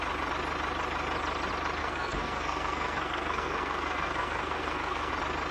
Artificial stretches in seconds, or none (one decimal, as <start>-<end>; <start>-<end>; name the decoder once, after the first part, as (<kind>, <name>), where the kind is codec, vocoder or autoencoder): 1.8-5.1 (codec, SNAC)